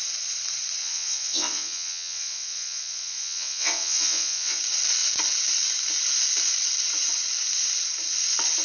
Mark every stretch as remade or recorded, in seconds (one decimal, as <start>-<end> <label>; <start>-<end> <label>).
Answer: 0.0-0.8 recorded; 0.8-4.6 remade; 4.6-8.6 recorded